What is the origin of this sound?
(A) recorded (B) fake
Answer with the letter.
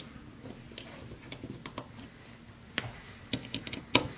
A